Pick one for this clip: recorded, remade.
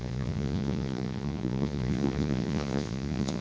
remade